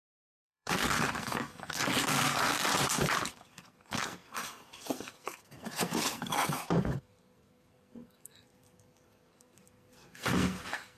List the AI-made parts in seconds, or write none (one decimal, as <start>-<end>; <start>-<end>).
0.0-2.5; 3.3-11.0